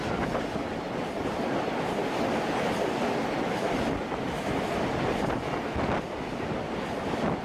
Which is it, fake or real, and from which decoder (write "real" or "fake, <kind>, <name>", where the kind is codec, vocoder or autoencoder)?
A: real